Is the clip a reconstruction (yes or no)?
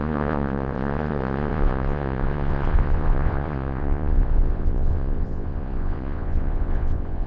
yes